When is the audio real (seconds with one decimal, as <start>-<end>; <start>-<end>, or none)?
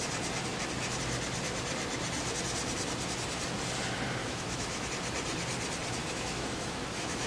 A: 0.0-4.2; 4.9-6.0